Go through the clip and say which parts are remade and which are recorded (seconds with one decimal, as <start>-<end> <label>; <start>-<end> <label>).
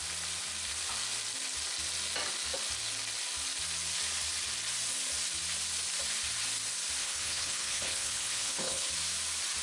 0.0-7.0 recorded; 7.0-8.9 remade; 8.9-9.6 recorded